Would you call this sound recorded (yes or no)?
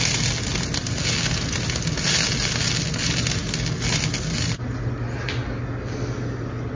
yes